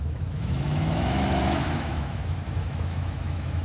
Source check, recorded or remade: remade